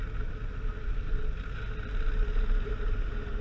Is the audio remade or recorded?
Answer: recorded